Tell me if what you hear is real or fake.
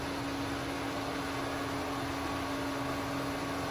real